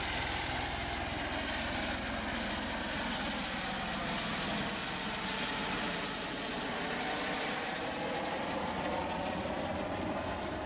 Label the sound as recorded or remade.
recorded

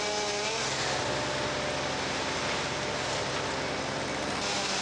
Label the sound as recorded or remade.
recorded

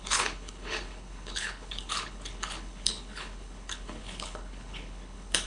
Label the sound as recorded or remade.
remade